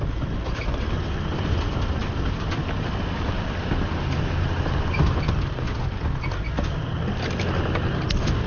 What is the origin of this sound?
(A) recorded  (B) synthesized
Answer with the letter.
A